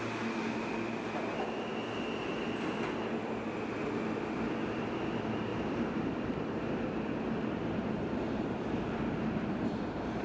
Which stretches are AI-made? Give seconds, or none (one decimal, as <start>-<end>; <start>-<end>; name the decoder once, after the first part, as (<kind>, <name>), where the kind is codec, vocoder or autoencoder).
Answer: 5.5-10.2 (vocoder, BigVGAN v2)